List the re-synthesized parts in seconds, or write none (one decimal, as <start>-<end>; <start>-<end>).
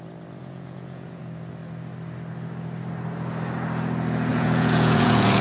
0.4-1.2; 4.3-5.4